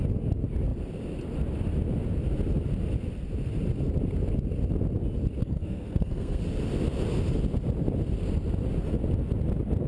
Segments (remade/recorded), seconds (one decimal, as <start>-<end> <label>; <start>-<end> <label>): 0.0-5.4 recorded; 5.4-6.4 remade; 6.4-9.9 recorded